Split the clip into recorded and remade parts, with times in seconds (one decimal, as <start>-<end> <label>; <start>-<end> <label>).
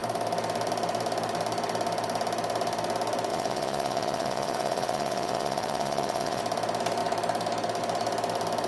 0.0-3.3 recorded; 3.3-6.4 remade; 6.4-8.7 recorded